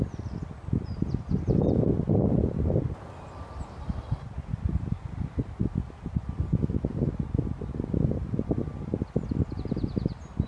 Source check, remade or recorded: recorded